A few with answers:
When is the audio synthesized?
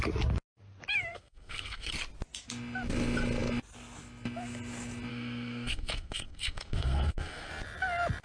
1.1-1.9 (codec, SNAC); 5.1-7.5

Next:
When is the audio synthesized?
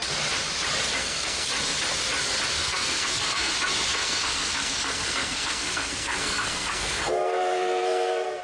1.0-1.5 (codec, SNAC); 2.5-3.5; 3.9-8.4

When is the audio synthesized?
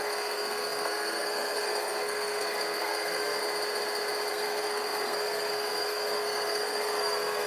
0.0-3.4 (codec, SNAC); 4.3-7.5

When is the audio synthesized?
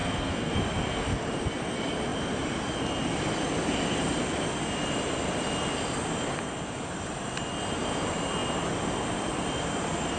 0.0-0.5 (codec, SNAC)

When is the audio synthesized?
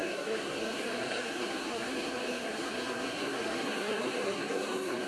0.0-5.1 (codec, SNAC)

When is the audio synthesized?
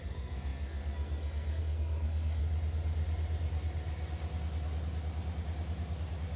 0.0-2.4 (codec, SNAC)